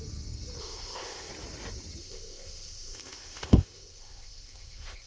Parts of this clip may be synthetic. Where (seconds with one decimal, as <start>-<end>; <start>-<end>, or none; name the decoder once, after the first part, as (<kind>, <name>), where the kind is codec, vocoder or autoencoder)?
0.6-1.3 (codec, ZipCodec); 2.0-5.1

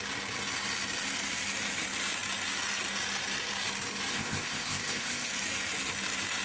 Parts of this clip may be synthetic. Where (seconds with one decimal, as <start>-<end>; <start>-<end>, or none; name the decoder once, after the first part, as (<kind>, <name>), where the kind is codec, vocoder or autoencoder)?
4.1-5.3 (codec, ZipCodec)

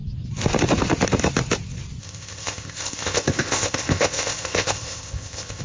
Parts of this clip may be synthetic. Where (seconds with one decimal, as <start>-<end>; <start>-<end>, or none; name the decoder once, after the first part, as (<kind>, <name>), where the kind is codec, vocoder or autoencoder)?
2.0-5.6 (codec, ZipCodec)

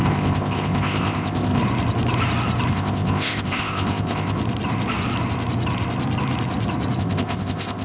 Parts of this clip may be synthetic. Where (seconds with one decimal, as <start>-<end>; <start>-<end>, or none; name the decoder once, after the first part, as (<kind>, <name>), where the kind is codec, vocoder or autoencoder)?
0.0-1.6 (codec, ZipCodec); 2.7-4.4; 7.0-7.8

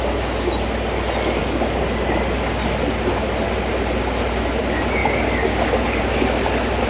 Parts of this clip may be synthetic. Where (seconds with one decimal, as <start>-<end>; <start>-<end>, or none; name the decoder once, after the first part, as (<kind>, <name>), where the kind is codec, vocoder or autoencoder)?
none

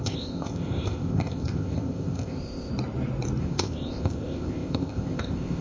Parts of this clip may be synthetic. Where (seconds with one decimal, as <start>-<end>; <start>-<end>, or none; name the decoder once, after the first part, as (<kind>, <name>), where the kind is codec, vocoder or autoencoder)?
0.0-2.7 (codec, ZipCodec); 3.4-5.6

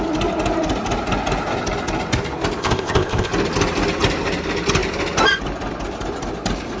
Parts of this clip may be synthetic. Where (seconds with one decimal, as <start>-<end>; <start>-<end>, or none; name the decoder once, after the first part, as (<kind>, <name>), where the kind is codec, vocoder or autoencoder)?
2.6-3.3 (codec, ZipCodec)

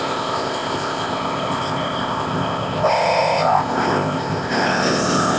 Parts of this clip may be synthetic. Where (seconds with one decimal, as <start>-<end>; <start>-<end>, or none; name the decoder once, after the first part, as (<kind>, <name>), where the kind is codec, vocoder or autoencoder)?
0.0-5.4 (codec, ZipCodec)